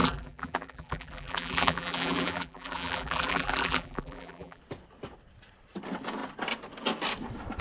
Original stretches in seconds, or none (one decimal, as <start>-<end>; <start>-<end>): 4.6-7.6